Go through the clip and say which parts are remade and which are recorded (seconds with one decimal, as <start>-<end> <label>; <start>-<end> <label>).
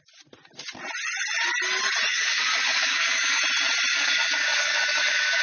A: 0.0-2.1 recorded; 2.1-3.4 remade; 3.4-3.9 recorded; 3.9-5.4 remade